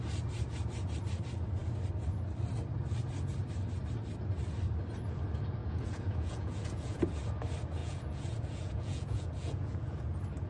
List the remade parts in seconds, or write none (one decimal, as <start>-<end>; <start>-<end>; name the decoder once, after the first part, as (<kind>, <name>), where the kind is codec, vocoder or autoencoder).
5.6-7.0 (vocoder, Vocos); 7.8-10.0